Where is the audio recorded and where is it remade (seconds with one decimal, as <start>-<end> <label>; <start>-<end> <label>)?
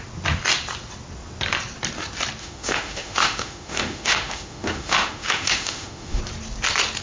0.0-2.4 recorded; 2.4-6.2 remade; 6.2-7.0 recorded